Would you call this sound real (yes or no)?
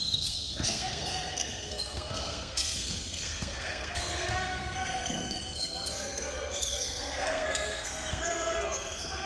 no